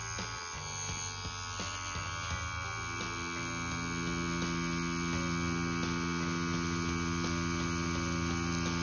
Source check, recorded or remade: recorded